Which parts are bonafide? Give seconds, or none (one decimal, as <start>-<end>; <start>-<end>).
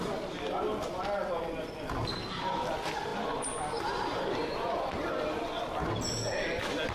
0.0-6.9